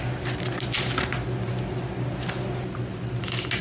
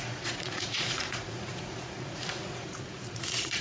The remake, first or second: second